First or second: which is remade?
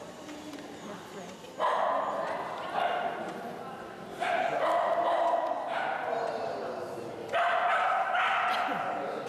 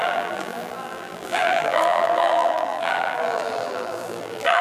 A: second